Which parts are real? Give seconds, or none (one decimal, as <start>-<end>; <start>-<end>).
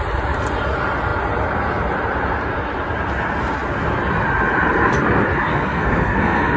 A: 0.0-5.5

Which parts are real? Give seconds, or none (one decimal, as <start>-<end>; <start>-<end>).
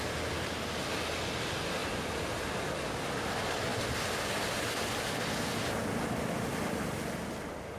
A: 0.0-7.8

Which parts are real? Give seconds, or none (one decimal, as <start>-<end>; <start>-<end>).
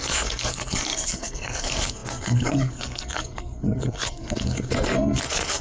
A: none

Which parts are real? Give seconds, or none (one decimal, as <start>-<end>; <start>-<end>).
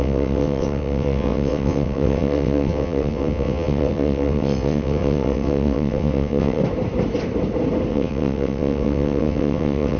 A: 6.6-7.9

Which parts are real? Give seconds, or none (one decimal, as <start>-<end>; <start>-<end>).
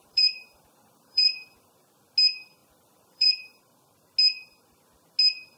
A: 1.7-2.6; 3.6-5.6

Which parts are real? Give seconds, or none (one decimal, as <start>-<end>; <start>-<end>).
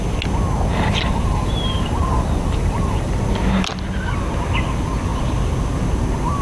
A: 0.0-0.7; 3.1-6.4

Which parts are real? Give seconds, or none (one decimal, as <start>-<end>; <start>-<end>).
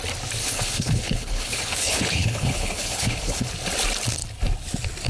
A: 0.0-0.4; 3.5-5.1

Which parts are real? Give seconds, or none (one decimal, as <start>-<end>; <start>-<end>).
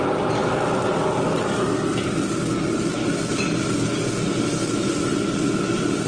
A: 0.0-6.1